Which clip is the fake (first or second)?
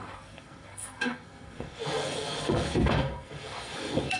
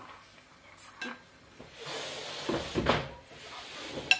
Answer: first